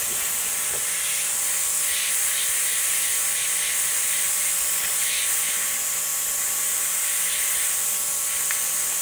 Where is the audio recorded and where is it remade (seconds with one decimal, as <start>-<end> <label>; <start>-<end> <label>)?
0.0-9.0 recorded